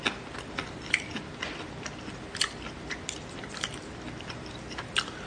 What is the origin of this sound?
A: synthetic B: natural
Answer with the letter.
B